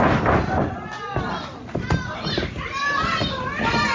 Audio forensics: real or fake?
real